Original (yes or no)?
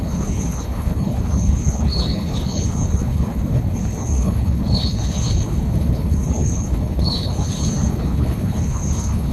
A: no